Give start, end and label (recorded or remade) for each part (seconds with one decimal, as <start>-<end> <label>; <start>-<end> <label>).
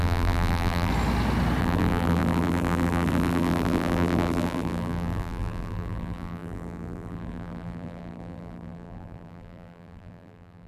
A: 0.0-0.9 remade; 0.9-1.6 recorded; 1.6-10.7 remade